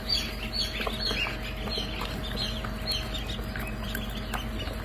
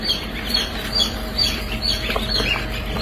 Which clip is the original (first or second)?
first